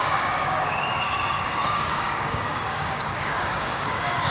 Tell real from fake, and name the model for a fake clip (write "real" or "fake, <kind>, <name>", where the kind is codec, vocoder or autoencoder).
fake, codec, DAC